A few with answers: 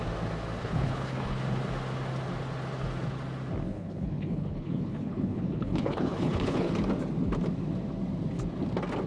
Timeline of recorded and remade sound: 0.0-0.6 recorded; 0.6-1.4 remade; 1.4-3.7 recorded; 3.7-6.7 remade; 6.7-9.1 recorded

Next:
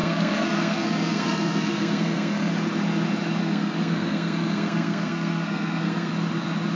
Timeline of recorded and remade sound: 0.0-2.5 remade; 2.5-3.4 recorded; 3.4-6.1 remade; 6.1-6.8 recorded

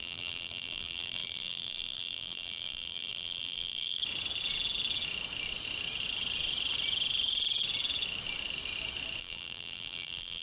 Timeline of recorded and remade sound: 0.0-4.0 remade; 4.0-9.2 recorded; 9.2-10.4 remade

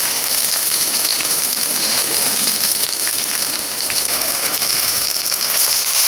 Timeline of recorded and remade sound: 0.0-6.1 remade

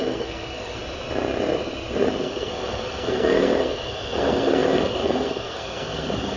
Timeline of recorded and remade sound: 0.0-0.8 remade; 0.8-2.2 recorded; 2.2-6.4 remade

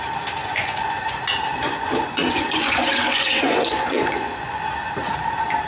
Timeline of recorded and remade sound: 0.0-0.4 recorded; 0.4-1.1 remade; 1.1-1.5 recorded; 1.5-4.6 remade; 4.6-5.7 recorded